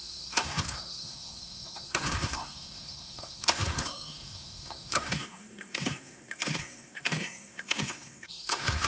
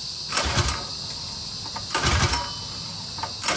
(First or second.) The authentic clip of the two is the second